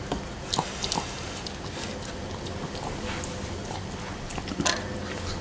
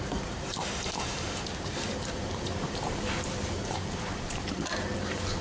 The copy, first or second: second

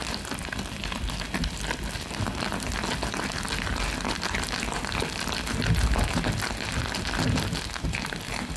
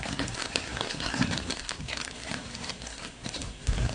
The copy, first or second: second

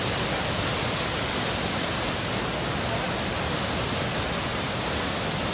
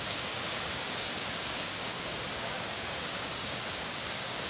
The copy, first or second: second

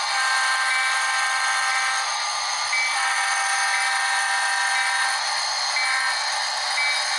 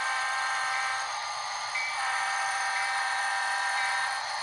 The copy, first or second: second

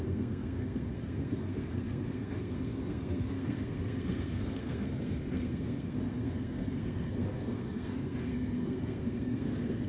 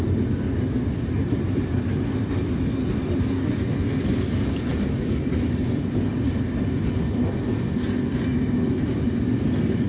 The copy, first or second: first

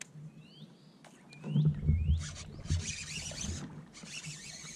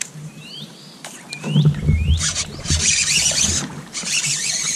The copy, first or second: second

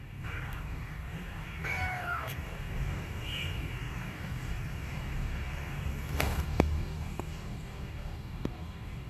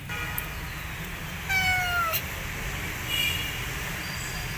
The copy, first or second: first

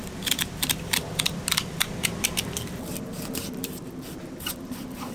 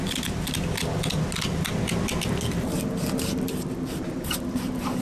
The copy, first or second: first